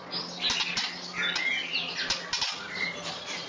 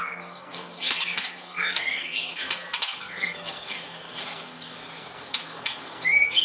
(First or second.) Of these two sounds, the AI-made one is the second